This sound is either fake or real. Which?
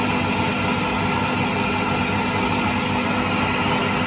real